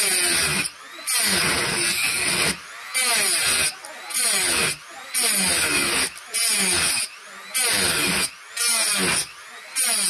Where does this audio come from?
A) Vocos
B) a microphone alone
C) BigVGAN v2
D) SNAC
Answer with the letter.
B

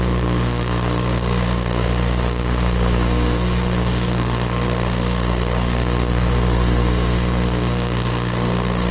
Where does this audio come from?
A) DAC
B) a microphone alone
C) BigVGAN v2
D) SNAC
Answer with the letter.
D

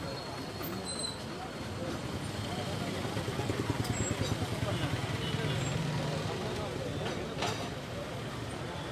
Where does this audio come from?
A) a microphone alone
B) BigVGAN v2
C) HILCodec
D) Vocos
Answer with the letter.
A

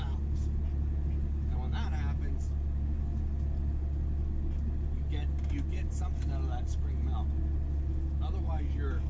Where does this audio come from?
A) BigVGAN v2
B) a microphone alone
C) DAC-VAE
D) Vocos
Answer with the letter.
B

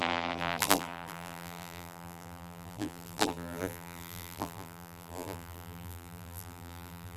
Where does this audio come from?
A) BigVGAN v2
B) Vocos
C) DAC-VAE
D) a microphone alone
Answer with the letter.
A